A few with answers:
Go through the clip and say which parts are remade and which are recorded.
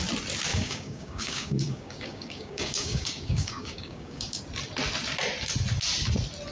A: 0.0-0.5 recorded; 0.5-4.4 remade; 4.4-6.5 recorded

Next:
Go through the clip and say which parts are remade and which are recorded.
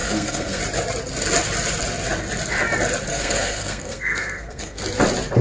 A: 0.0-0.6 remade; 0.6-3.1 recorded; 3.1-4.8 remade; 4.8-5.4 recorded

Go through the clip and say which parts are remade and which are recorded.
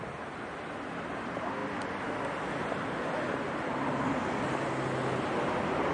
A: 0.0-5.9 recorded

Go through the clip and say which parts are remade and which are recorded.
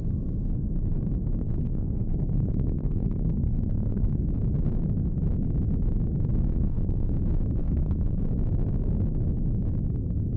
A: 0.0-1.4 recorded; 1.4-4.2 remade; 4.2-6.5 recorded; 6.5-7.1 remade; 7.1-7.6 recorded; 7.6-8.2 remade; 8.2-10.4 recorded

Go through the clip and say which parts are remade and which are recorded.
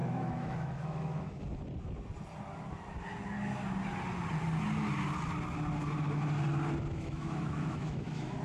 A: 0.0-1.4 remade; 1.4-6.9 recorded; 6.9-8.4 remade